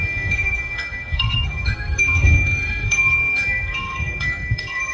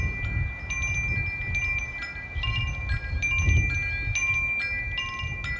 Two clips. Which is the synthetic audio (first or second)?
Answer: first